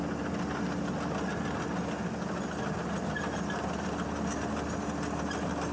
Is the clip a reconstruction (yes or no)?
no